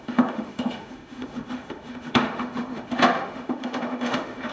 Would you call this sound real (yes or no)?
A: no